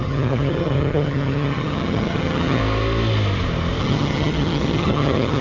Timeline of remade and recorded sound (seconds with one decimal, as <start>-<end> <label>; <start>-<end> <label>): 0.0-2.6 remade; 2.6-3.8 recorded; 3.8-5.4 remade